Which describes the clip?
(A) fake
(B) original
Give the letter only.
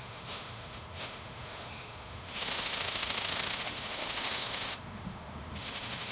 A